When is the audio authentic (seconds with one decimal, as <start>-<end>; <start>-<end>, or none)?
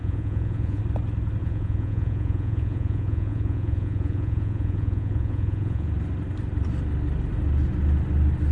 0.8-1.4; 5.9-8.5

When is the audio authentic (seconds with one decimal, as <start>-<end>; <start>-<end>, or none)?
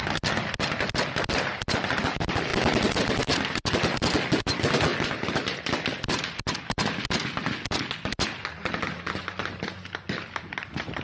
0.0-11.0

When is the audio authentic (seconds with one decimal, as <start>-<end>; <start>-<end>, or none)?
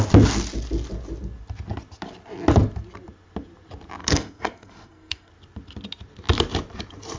0.0-4.0; 5.3-7.2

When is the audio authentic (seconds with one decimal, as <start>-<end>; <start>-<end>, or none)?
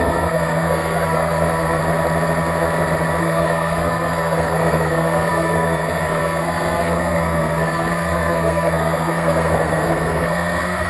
1.8-3.2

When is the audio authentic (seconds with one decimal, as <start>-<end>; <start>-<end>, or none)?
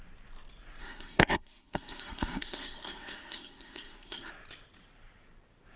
0.0-0.8; 4.3-5.8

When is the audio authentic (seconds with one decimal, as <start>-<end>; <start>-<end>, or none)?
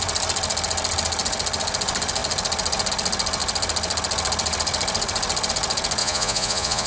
0.0-6.0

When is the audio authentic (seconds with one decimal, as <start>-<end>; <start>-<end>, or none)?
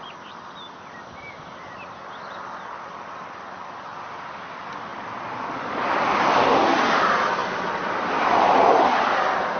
0.0-9.6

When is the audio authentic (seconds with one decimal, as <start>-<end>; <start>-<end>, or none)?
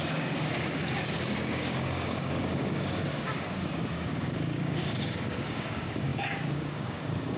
none